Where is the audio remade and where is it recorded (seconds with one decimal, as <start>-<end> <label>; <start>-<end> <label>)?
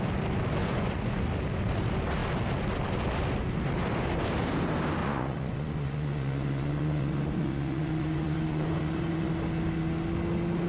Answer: 0.0-0.6 recorded; 0.6-1.2 remade; 1.2-5.0 recorded; 5.0-9.3 remade; 9.3-10.7 recorded